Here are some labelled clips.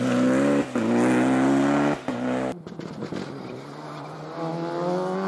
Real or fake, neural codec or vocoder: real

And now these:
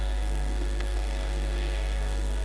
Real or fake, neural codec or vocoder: fake, codec, SNAC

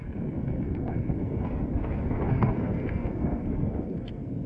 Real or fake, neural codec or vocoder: fake, codec, SNAC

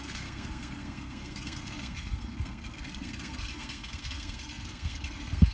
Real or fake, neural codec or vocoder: fake, codec, SNAC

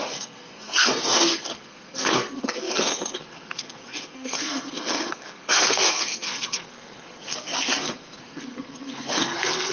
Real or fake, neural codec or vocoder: fake, codec, SNAC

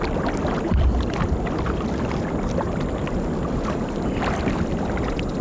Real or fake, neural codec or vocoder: real